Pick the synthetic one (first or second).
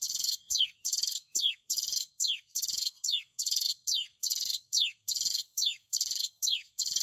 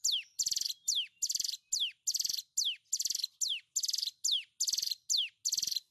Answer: first